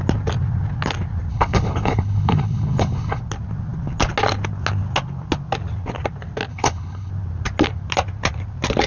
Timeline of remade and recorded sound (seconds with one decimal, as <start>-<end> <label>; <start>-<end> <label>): 0.0-1.3 recorded; 1.3-3.2 remade; 3.2-6.5 recorded; 6.5-7.1 remade; 7.1-8.9 recorded